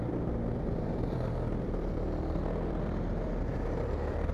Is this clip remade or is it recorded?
remade